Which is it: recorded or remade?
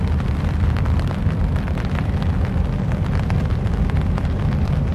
remade